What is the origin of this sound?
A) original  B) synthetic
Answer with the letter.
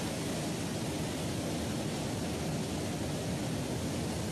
A